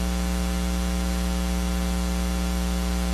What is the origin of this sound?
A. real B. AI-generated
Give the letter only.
A